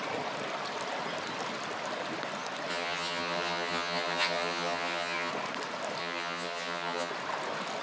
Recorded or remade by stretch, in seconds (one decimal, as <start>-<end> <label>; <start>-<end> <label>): 0.0-2.7 recorded; 2.7-5.3 remade; 5.3-6.0 recorded; 6.0-7.1 remade; 7.1-7.8 recorded